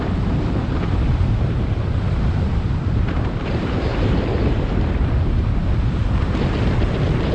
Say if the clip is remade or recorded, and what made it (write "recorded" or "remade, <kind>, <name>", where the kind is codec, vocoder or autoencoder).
remade, vocoder, BigVGAN v2